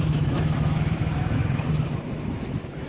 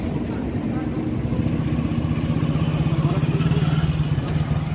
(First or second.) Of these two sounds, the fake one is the first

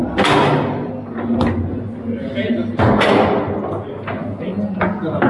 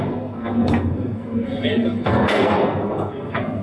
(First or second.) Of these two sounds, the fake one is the second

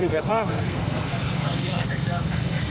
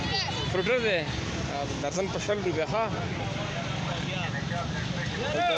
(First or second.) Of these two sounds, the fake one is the first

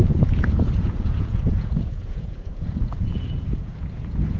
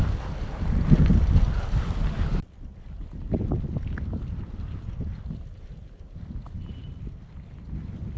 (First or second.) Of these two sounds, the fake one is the first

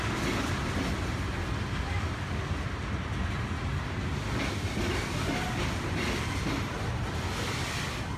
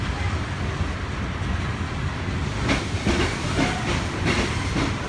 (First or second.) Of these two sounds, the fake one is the second